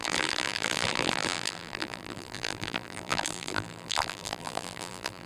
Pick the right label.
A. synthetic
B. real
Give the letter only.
A